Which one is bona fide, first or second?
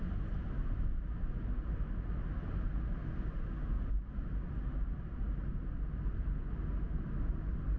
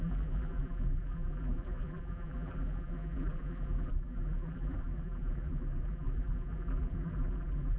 first